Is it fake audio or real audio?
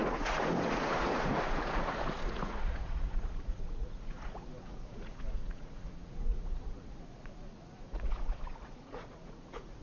fake